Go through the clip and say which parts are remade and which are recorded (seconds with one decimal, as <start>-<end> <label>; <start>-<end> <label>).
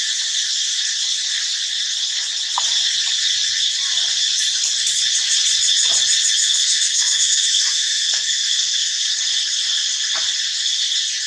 0.0-6.4 recorded; 6.4-9.0 remade; 9.0-11.3 recorded